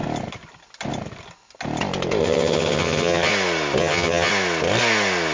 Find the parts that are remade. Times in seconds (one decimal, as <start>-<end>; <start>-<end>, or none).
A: 2.2-3.3; 3.8-4.3